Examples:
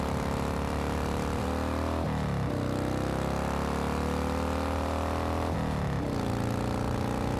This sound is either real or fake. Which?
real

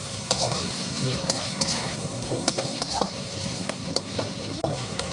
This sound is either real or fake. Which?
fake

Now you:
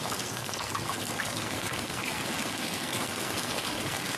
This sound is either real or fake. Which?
fake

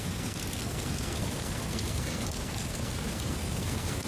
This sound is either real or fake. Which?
fake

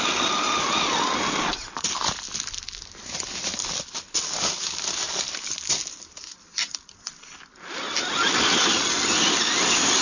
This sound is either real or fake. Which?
real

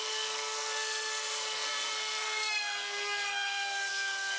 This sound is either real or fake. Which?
fake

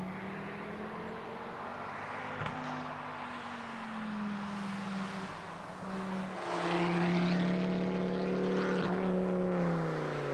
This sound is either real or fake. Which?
real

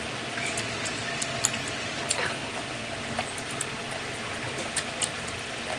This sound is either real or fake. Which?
real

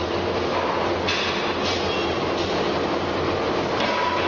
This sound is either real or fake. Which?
real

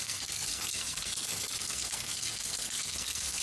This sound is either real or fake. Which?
fake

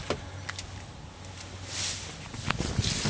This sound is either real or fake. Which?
real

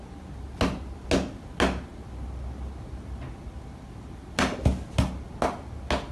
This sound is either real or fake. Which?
real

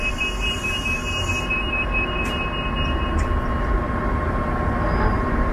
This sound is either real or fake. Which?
real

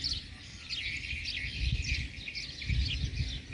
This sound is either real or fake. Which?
real